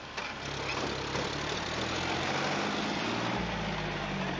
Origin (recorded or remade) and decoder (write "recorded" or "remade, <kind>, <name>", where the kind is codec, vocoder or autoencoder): recorded